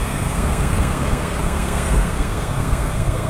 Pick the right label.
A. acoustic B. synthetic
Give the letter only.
B